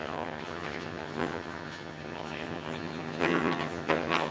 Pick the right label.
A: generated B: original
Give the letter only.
A